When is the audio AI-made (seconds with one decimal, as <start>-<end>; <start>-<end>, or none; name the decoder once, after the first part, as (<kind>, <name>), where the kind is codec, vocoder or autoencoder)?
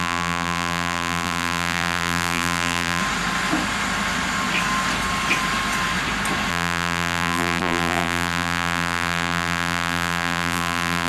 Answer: 0.0-3.0 (vocoder, BigVGAN v2); 6.5-11.1